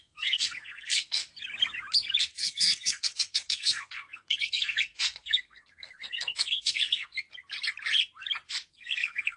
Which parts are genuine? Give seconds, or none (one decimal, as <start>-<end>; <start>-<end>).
1.2-2.2; 7.1-8.7